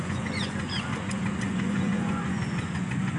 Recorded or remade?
remade